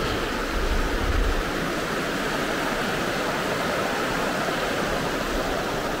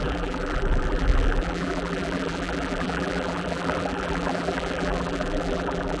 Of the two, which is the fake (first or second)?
second